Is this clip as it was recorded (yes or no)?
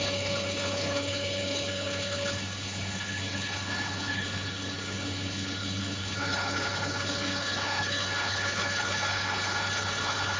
no